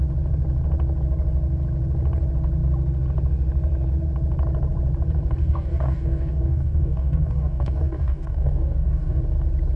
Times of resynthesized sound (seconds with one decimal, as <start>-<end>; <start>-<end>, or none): 5.4-9.2